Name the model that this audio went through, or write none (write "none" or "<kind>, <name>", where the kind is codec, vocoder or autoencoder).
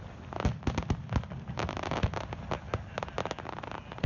none